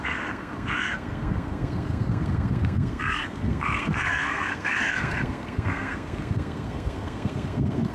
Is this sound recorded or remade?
remade